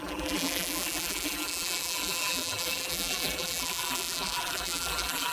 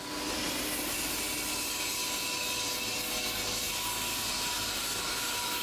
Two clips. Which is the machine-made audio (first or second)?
first